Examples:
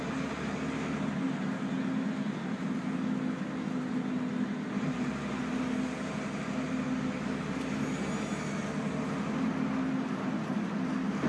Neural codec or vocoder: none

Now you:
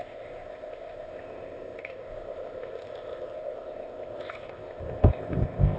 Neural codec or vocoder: codec, ZipCodec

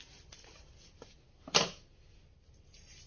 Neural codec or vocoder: none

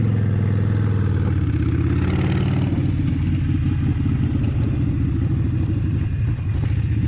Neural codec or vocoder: none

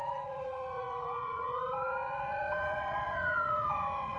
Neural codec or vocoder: vocoder, WaveNeXt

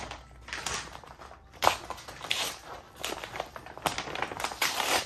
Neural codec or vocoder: vocoder, BigVGAN v2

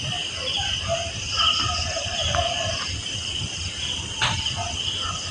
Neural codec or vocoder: none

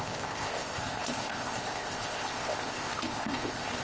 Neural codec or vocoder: codec, ZipCodec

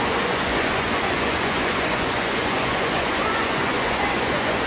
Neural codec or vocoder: vocoder, Vocos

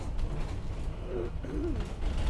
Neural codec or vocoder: none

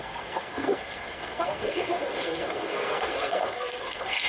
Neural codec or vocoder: codec, SNAC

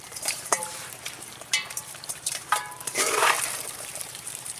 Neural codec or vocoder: vocoder, BigVGAN v2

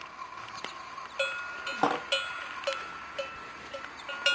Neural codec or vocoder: none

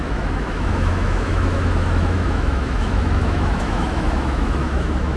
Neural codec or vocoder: autoencoder, DAC-VAE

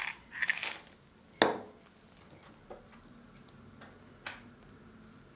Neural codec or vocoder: none